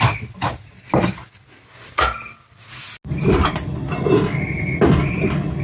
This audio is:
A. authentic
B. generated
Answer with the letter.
A